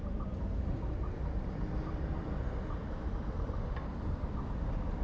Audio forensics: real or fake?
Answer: fake